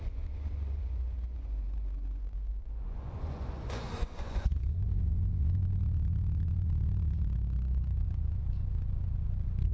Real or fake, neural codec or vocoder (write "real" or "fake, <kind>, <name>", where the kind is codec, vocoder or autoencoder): fake, vocoder, Vocos